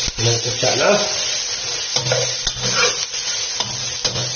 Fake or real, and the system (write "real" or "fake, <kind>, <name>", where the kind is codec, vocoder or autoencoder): real